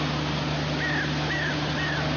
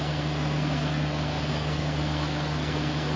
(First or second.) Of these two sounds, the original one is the first